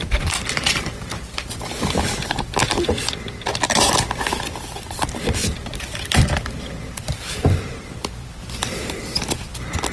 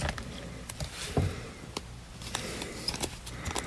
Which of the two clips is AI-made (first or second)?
first